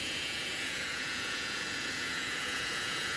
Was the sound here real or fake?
fake